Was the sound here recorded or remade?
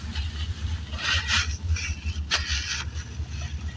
recorded